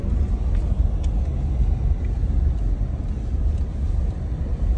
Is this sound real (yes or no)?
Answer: yes